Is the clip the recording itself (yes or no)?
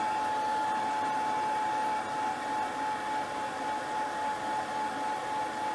yes